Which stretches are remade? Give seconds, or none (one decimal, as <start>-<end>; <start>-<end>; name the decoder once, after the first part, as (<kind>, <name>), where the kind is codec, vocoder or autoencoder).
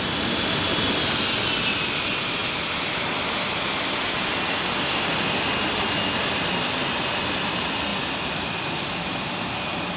none